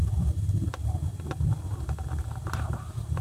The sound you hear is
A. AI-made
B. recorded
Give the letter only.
B